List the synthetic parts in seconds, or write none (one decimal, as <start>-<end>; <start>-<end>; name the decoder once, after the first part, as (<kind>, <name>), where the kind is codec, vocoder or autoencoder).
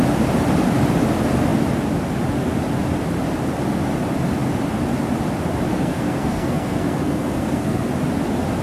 5.7-7.9 (codec, SNAC)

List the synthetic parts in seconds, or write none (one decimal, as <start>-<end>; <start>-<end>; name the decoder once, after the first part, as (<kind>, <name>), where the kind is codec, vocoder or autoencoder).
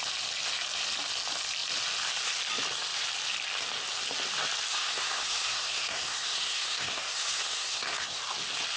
4.7-8.2 (codec, SNAC)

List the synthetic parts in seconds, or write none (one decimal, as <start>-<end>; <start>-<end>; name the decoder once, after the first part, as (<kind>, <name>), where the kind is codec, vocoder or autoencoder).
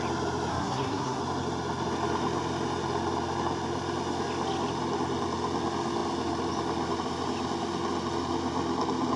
0.5-1.2 (codec, SNAC)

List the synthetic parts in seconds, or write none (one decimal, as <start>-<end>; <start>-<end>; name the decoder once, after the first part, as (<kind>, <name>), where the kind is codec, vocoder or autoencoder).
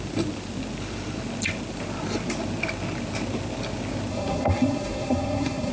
4.1-5.7 (codec, SNAC)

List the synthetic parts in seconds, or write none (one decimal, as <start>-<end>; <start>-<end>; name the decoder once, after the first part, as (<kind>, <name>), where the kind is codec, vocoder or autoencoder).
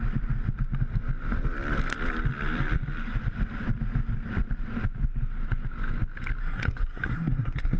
6.4-7.8 (codec, SNAC)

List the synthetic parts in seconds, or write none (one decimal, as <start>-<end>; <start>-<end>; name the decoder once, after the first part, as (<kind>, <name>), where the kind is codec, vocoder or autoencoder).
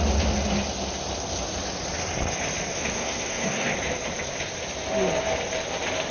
2.7-3.7 (codec, SNAC)